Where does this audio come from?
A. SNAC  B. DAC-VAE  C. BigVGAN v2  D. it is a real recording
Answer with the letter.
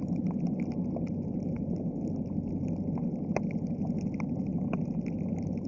D